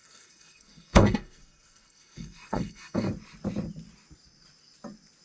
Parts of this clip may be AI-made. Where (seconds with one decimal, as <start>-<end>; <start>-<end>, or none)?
0.0-3.1